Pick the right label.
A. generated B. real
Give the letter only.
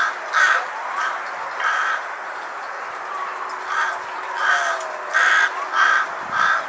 B